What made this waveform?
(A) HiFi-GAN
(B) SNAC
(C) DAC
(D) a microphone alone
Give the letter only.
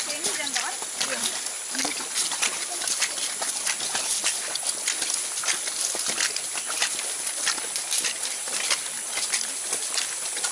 D